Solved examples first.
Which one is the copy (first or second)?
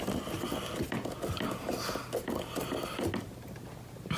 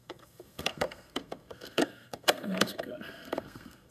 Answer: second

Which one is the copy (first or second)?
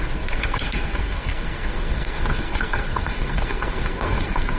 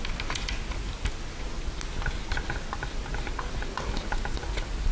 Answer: first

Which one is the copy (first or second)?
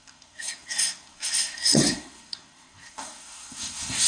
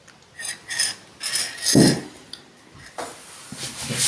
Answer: first